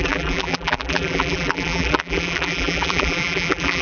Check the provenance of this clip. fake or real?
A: fake